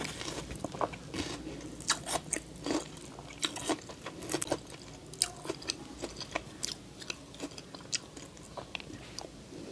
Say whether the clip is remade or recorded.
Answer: recorded